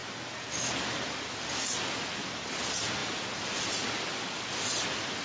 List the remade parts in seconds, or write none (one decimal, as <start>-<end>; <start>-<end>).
none